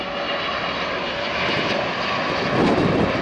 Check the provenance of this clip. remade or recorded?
recorded